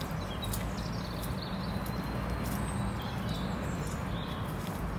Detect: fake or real real